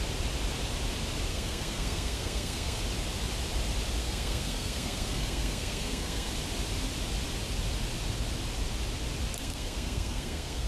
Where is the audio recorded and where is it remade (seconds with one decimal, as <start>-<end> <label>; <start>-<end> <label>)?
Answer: 0.0-1.3 recorded; 1.3-2.8 remade; 2.8-4.0 recorded; 4.0-6.3 remade; 6.3-9.4 recorded; 9.4-10.7 remade